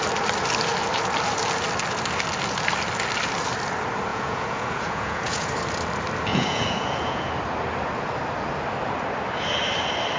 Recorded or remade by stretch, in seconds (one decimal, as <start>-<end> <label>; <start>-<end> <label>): 0.0-4.1 recorded; 4.1-5.5 remade; 5.5-6.3 recorded; 6.3-7.3 remade; 7.3-10.2 recorded